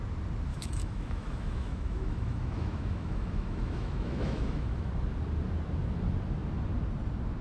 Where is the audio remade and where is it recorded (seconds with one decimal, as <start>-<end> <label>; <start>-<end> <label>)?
0.0-0.5 recorded; 0.5-4.9 remade; 4.9-7.4 recorded